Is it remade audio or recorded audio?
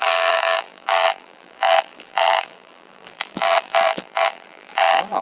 remade